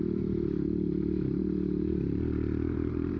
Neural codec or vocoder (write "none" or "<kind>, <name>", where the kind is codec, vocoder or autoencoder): vocoder, BigVGAN v2